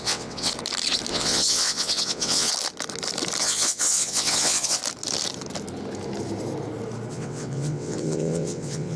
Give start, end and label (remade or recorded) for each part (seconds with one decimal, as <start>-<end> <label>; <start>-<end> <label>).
0.0-0.5 remade; 0.5-1.1 recorded; 1.1-2.5 remade; 2.5-3.4 recorded; 3.4-4.8 remade; 4.8-7.1 recorded; 7.1-9.0 remade